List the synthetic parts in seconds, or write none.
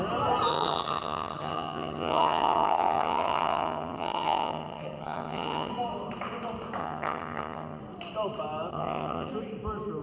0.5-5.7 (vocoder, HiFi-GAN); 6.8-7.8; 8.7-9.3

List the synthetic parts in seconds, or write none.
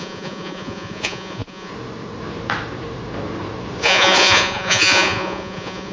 0.0-1.7 (vocoder, Vocos); 3.8-5.9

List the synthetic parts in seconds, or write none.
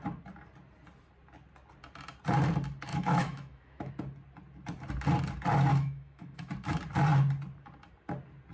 2.9-3.9 (autoencoder, DAC-VAE); 5.7-6.5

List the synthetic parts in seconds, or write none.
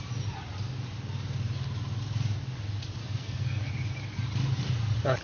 3.0-3.7 (codec, SNAC)